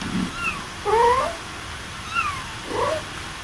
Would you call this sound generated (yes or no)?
no